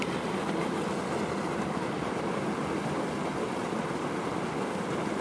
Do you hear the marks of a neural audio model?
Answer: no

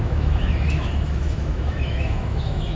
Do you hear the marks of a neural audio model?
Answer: yes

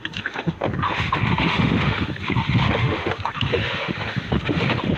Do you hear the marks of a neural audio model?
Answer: yes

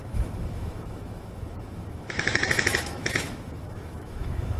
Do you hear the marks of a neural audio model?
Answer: yes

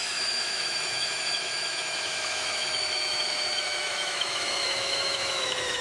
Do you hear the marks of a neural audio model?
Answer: yes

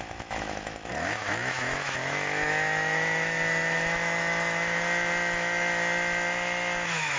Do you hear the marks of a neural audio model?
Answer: yes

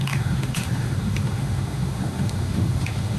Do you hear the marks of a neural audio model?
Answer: yes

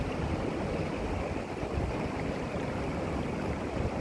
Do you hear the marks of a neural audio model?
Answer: no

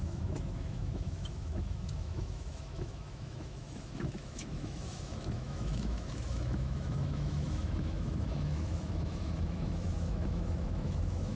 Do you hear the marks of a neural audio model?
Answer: yes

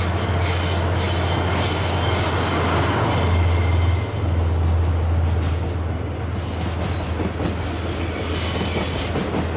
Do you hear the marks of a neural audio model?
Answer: no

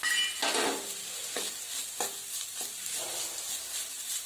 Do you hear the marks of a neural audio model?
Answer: no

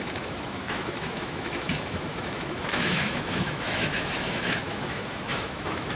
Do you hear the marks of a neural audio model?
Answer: yes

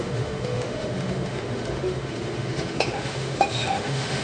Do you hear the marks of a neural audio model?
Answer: yes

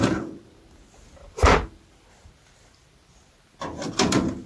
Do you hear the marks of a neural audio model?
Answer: no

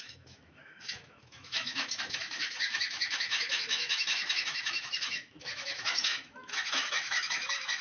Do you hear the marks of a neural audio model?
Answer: yes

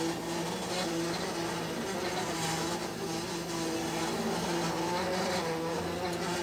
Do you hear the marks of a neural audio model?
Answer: no